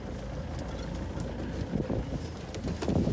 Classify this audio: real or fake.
real